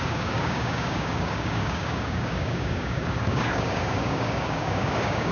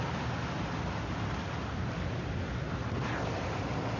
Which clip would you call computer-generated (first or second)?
first